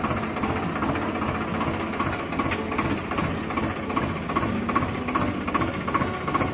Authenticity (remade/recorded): recorded